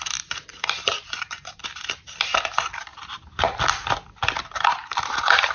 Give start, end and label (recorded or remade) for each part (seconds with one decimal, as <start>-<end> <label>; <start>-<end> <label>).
0.0-0.5 recorded; 0.5-1.6 remade; 1.6-2.9 recorded; 2.9-3.6 remade; 3.6-5.5 recorded